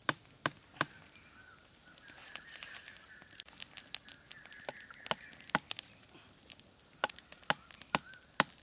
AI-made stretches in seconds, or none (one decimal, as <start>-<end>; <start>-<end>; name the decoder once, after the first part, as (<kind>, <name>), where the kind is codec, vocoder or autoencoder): none